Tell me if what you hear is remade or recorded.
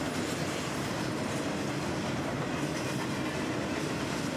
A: recorded